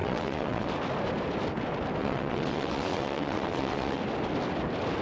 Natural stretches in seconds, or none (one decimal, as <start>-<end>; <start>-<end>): 0.7-2.0; 4.0-5.0